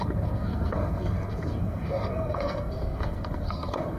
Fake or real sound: fake